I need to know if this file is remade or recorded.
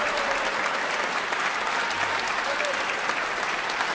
recorded